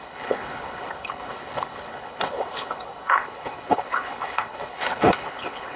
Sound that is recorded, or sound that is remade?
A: remade